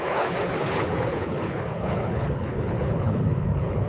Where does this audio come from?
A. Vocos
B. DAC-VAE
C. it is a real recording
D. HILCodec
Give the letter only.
D